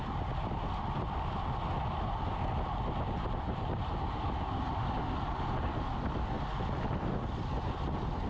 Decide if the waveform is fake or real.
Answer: real